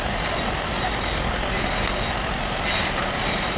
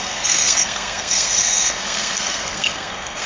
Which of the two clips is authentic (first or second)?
first